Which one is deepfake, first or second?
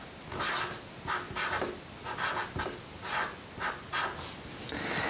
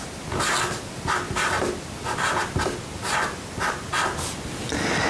second